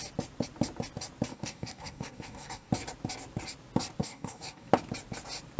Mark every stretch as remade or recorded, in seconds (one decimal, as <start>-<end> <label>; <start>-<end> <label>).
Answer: 0.0-1.3 recorded; 1.3-2.7 remade; 2.7-4.0 recorded; 4.0-4.7 remade; 4.7-5.6 recorded